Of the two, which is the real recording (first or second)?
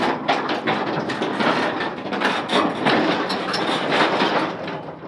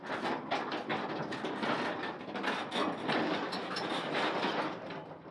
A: second